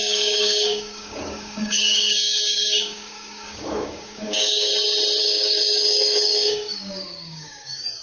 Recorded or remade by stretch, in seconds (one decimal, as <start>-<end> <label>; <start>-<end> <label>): 0.0-4.7 remade; 4.7-5.2 recorded; 5.2-8.0 remade